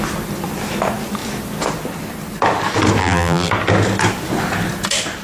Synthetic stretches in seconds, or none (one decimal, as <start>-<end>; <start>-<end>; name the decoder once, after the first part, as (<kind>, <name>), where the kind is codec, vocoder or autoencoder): 3.0-3.5 (vocoder, BigVGAN v2)